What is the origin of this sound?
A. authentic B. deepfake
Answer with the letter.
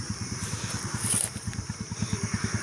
B